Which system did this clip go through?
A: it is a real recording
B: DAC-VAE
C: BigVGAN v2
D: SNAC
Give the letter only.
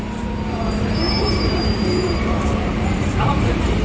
C